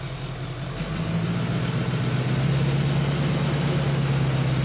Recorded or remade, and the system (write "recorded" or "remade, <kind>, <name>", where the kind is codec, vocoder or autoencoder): recorded